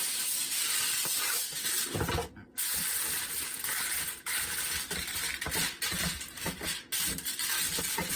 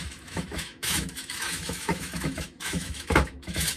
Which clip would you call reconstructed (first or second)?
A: second